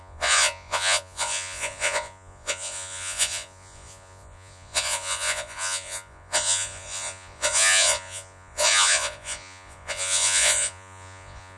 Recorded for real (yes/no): no